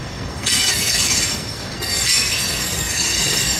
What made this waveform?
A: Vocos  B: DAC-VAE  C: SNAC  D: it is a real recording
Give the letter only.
C